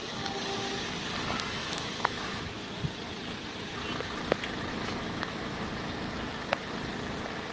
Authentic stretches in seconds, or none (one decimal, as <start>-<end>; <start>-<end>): 0.0-1.6; 2.8-4.7; 5.7-7.5